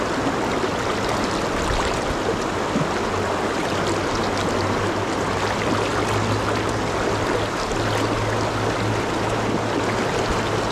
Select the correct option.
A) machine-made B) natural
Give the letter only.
B